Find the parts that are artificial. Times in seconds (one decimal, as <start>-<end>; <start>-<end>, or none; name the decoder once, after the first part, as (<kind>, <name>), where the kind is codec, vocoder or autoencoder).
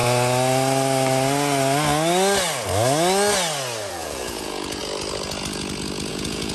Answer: 3.9-4.8 (vocoder, Vocos); 6.1-6.5